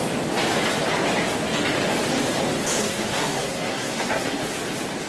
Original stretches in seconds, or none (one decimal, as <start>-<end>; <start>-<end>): 0.0-2.8; 4.4-5.1